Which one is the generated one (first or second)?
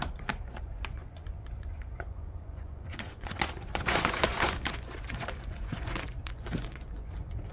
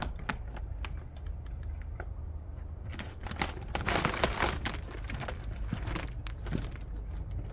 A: first